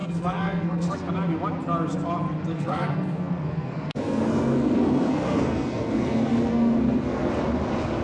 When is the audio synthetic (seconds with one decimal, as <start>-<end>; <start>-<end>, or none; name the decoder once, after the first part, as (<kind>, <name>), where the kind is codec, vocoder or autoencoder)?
0.0-1.1 (codec, SNAC); 2.5-7.3